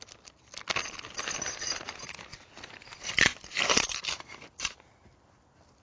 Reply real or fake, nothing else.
real